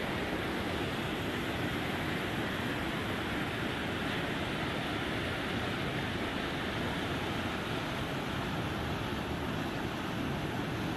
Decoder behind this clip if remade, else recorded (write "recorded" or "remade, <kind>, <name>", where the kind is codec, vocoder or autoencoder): recorded